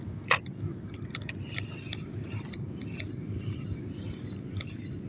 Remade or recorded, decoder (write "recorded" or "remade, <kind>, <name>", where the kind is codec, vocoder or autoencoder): recorded